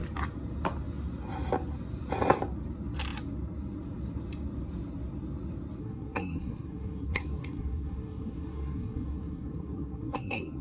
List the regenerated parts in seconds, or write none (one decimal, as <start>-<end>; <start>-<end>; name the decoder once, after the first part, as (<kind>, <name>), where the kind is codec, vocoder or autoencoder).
5.8-10.6 (codec, SNAC)